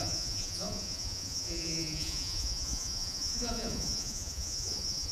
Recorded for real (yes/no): no